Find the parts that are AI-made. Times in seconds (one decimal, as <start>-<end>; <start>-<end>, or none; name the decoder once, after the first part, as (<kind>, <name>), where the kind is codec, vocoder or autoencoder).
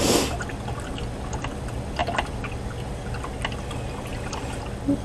4.1-4.6 (vocoder, BigVGAN v2)